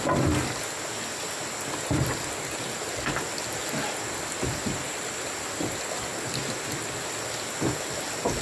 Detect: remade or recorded recorded